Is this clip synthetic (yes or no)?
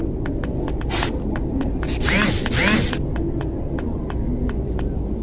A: no